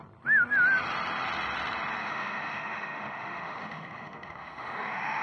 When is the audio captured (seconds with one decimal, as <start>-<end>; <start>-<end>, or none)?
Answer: 0.0-2.0